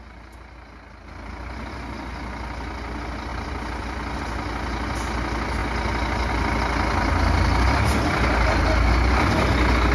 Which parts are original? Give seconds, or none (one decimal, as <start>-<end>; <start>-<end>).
0.0-3.3; 4.2-9.9

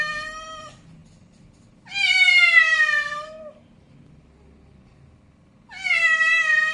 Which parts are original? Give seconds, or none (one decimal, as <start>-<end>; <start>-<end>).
0.0-1.0; 5.0-6.7

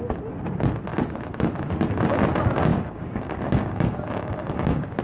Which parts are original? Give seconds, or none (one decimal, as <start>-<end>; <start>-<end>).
0.0-2.7

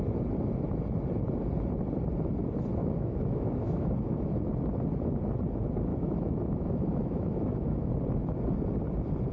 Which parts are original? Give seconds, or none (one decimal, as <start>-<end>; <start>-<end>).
0.0-2.8; 4.5-5.9; 7.9-9.3

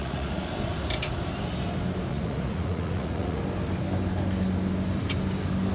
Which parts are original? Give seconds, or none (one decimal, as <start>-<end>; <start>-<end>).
0.5-2.1; 3.4-5.7

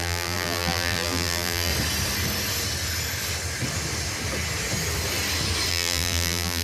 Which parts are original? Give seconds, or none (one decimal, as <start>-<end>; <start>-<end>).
1.7-5.7

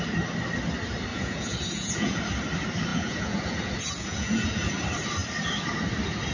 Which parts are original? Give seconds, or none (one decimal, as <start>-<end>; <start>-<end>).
0.0-1.1; 2.2-2.9; 4.7-6.3

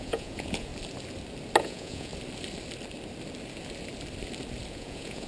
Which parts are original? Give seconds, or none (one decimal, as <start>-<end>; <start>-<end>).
0.7-1.6; 2.1-4.7